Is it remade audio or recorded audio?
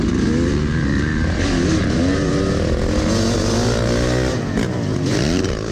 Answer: recorded